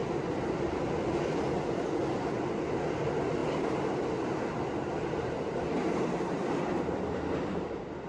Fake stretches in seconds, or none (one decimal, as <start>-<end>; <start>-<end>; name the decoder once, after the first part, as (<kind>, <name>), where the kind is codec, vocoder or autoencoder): none